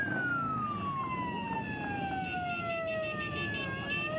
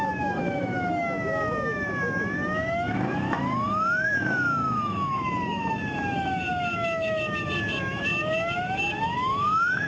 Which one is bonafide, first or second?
first